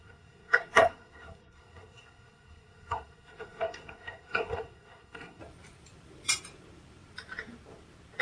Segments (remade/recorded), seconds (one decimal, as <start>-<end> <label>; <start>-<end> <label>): 0.0-5.4 remade; 5.4-8.2 recorded